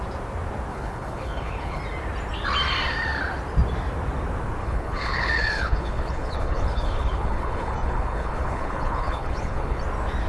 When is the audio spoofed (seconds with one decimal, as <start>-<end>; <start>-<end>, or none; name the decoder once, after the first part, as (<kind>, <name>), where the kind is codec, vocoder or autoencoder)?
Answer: 0.7-1.8 (codec, HILCodec); 4.6-9.8